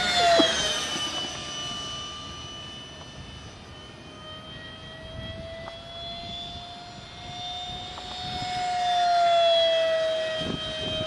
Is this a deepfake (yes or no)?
no